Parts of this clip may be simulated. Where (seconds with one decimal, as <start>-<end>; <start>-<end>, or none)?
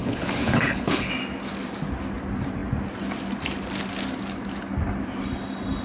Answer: 0.0-1.1